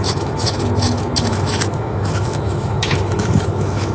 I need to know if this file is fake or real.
fake